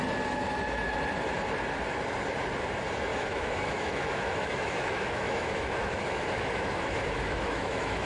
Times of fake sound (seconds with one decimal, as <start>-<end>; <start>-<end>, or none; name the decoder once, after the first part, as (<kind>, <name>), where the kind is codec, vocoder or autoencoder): 3.1-8.1 (autoencoder, DAC-VAE)